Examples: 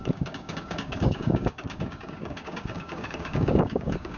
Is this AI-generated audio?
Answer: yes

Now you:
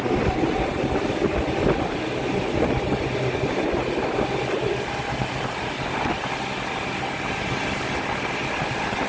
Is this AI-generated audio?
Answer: no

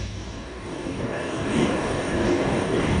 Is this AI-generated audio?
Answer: yes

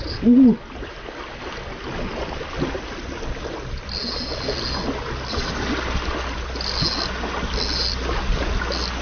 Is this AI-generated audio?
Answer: no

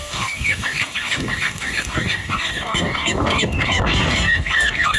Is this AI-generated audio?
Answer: yes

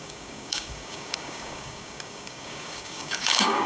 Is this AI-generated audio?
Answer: yes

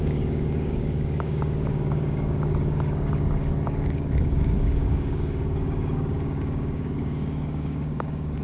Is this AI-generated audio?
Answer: yes